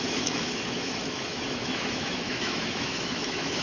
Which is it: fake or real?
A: fake